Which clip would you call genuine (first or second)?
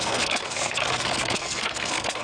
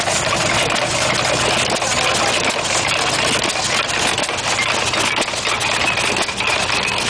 second